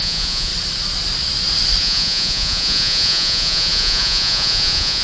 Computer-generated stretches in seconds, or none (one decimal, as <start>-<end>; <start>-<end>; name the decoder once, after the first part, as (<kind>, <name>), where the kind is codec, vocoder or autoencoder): 0.0-0.5 (vocoder, Vocos); 1.8-5.0